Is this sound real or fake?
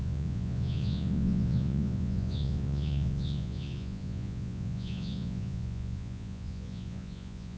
fake